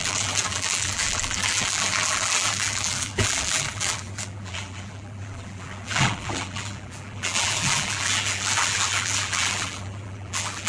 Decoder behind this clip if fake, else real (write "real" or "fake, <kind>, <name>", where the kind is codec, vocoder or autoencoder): fake, vocoder, BigVGAN v2